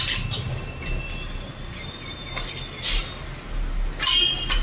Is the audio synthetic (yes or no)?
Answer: no